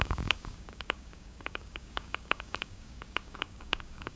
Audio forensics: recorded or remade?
remade